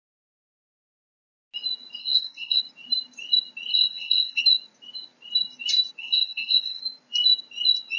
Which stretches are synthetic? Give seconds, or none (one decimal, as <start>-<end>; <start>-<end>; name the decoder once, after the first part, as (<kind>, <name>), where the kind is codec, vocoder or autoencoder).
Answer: 2.0-2.6 (codec, SNAC); 3.7-4.4; 6.0-6.8